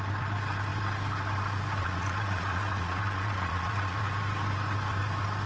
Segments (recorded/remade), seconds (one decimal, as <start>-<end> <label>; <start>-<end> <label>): 0.0-1.8 recorded; 1.8-4.0 remade; 4.0-5.5 recorded